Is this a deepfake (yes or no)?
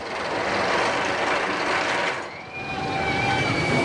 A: no